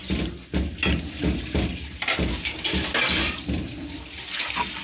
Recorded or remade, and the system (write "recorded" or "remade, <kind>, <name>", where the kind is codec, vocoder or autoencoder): recorded